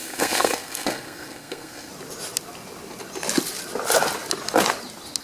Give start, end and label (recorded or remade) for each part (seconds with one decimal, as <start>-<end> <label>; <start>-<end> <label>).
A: 0.0-1.9 remade; 1.9-5.2 recorded